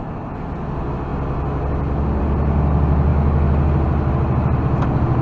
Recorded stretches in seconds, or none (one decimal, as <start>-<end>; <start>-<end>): 0.0-5.2